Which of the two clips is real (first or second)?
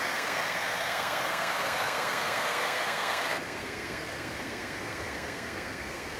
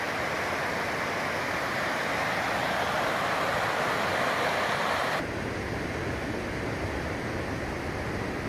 second